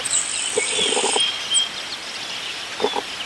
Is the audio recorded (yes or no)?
no